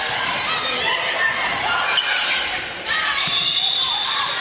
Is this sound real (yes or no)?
no